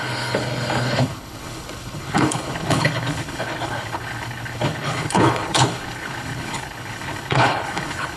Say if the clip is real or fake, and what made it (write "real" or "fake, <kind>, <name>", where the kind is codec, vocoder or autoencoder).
fake, codec, HILCodec